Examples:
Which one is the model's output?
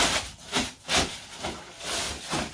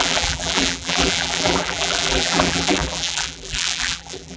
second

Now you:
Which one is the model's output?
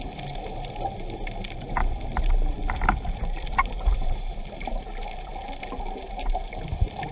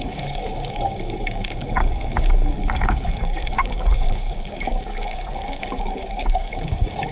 second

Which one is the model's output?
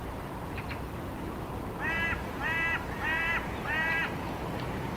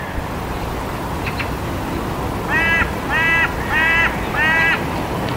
first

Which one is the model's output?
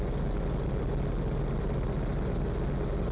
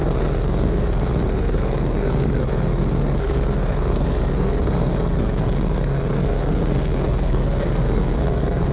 second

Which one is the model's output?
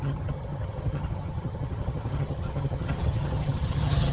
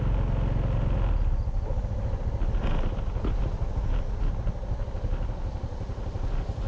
first